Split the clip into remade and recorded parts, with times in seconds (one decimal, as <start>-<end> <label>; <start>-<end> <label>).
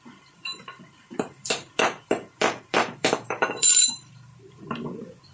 0.0-5.3 remade